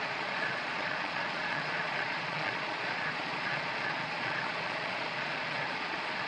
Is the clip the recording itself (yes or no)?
no